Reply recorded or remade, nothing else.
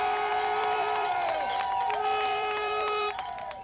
remade